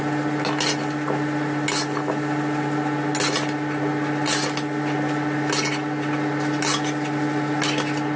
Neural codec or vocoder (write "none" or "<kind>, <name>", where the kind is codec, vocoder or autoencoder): none